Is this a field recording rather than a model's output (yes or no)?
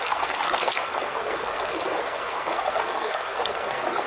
no